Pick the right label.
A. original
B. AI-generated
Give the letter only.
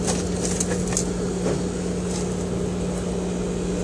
A